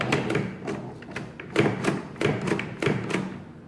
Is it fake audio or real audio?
real